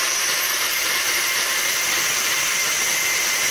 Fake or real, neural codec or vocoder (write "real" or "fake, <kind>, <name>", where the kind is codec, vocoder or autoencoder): fake, vocoder, BigVGAN v2